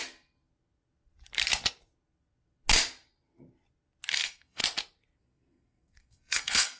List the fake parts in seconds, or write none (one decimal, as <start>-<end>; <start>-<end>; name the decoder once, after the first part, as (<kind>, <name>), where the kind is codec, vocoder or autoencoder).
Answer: 4.1-4.6 (codec, SNAC); 5.2-6.8